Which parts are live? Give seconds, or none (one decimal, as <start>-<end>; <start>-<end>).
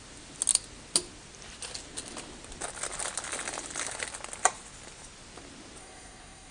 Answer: 0.0-5.8